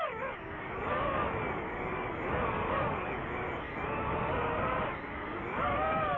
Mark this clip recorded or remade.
remade